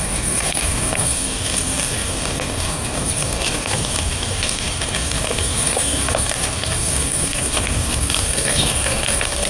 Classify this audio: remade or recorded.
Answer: remade